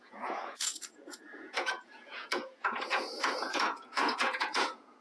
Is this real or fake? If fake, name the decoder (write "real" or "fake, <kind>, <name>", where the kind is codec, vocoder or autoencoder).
fake, vocoder, Vocos